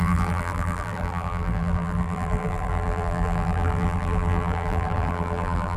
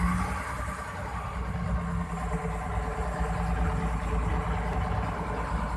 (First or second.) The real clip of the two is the second